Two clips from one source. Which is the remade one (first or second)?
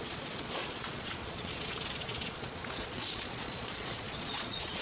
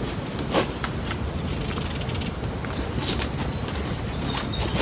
first